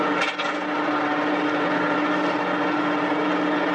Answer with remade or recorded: recorded